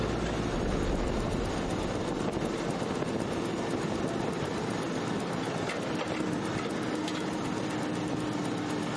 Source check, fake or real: real